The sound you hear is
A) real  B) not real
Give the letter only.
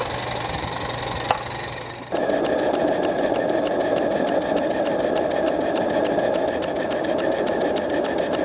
A